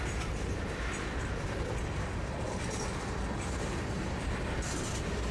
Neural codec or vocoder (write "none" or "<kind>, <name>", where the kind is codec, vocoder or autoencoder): none